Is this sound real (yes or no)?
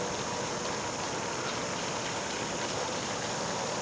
yes